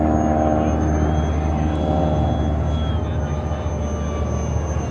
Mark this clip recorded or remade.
recorded